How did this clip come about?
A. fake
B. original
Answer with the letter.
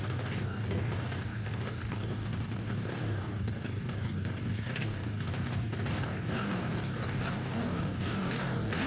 A